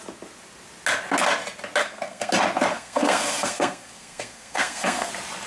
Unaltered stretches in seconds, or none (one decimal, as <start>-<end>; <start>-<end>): 0.0-1.8; 2.3-2.7; 5.1-5.5